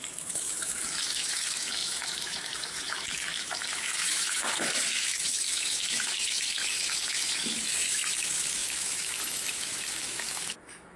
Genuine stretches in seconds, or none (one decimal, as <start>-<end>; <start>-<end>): none